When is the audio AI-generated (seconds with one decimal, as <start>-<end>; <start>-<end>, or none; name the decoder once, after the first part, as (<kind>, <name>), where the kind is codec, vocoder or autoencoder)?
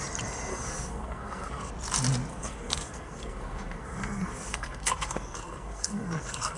0.5-1.7 (codec, SNAC); 2.3-6.6